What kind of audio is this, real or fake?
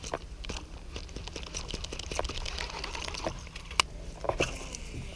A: real